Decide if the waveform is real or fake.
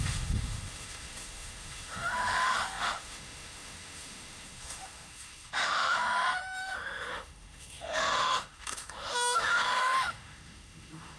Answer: fake